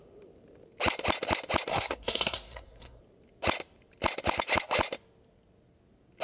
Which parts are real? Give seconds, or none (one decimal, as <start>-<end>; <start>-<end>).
0.0-1.7; 3.0-6.2

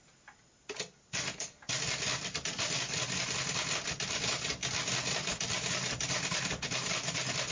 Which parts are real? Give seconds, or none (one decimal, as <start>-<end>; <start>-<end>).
0.0-2.1; 4.1-4.6; 6.4-7.5

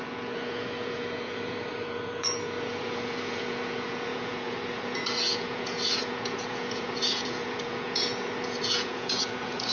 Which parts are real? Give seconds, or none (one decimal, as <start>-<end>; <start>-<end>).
none

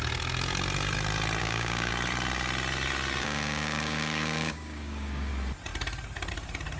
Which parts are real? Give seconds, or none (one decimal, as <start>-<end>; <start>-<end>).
0.0-1.4; 1.9-3.2; 5.3-6.8

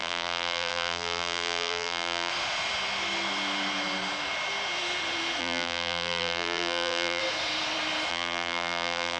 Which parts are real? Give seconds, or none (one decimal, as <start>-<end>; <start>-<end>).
2.3-5.4; 7.2-8.1

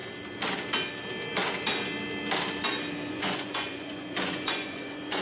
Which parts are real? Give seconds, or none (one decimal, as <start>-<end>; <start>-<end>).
0.0-3.1